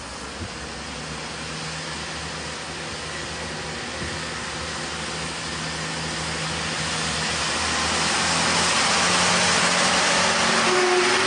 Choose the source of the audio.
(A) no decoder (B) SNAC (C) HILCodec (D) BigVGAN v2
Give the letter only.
A